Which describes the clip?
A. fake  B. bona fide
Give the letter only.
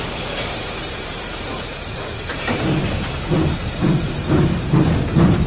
A